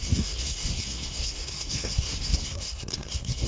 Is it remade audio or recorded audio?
remade